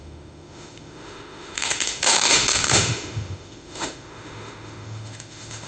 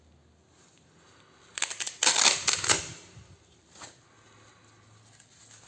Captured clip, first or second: second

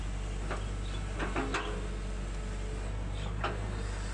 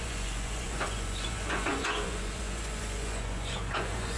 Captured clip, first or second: first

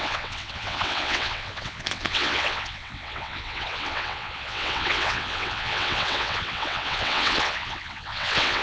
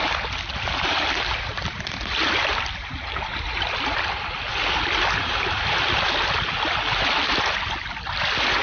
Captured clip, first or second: second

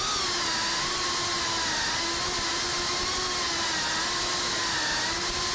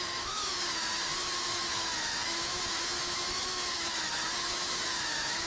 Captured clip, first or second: first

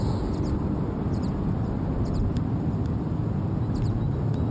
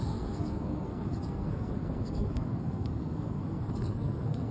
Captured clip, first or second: first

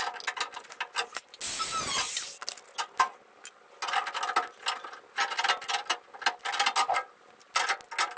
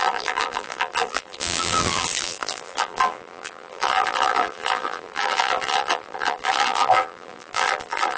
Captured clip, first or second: first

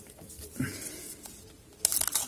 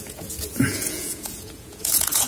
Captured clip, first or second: first